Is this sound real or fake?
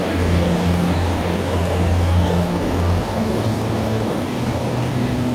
fake